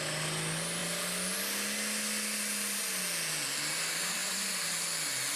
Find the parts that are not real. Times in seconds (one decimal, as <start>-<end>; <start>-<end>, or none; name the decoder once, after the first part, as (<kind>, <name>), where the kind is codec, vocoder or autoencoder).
none